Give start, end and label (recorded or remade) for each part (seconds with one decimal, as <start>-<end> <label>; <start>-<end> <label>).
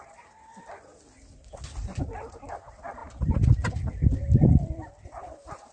0.0-5.7 recorded